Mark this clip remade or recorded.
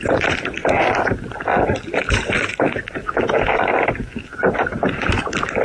remade